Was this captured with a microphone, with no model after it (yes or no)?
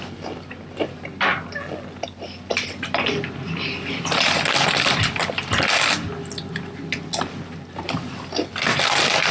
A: yes